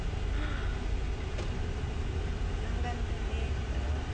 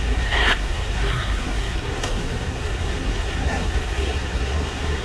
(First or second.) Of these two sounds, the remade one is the second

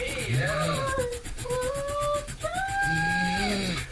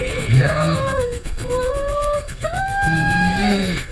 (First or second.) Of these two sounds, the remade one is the second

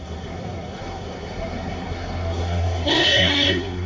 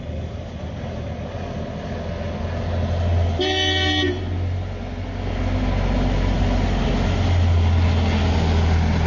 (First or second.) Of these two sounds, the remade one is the first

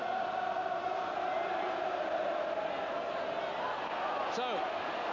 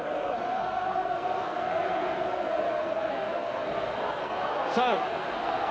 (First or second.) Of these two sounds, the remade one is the second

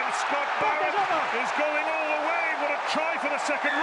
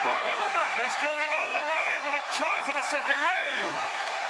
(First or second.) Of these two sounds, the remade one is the second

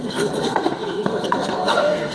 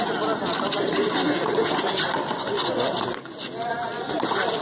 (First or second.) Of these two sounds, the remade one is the first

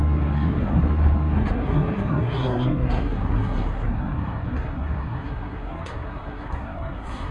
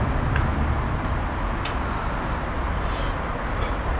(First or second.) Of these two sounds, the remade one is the first